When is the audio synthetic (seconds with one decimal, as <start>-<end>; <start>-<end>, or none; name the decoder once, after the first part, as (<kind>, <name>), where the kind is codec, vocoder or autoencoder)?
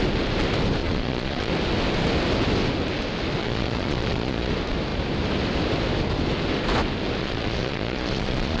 0.8-1.5 (vocoder, Vocos); 3.4-4.5; 7.2-8.6